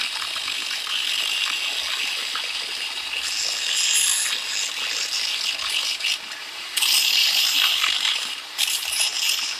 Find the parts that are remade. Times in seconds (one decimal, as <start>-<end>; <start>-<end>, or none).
6.4-9.1